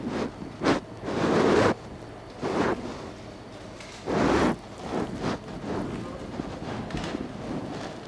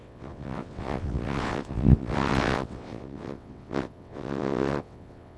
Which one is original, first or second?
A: first